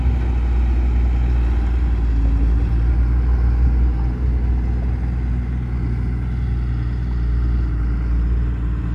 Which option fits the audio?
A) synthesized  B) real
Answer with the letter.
B